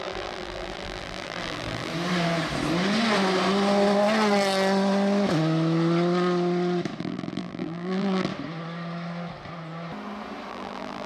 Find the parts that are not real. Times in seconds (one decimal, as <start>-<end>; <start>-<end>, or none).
0.0-1.9; 7.0-8.3; 10.5-11.1